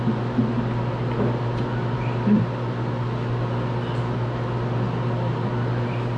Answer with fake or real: real